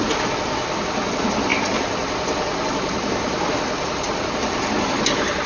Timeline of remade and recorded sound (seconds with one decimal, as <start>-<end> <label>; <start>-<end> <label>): 0.0-5.5 recorded